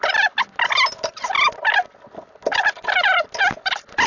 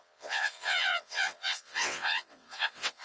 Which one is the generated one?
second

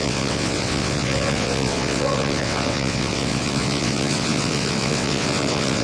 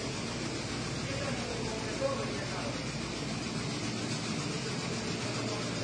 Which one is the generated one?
first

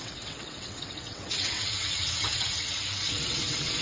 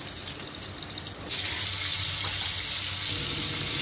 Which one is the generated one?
first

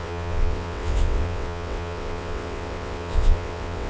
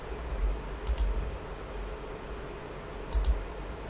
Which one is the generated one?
first